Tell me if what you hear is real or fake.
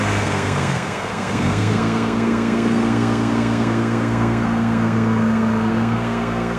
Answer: fake